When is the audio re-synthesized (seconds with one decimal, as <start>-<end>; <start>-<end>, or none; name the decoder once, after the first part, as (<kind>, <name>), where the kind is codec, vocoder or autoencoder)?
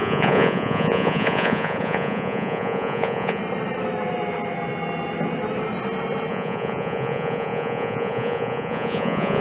0.0-3.4 (vocoder, Vocos); 6.3-9.4